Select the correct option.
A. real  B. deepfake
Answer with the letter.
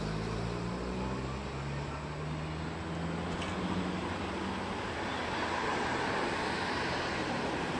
A